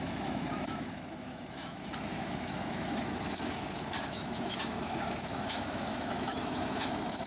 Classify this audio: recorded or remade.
remade